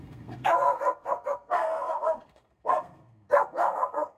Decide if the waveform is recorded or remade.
remade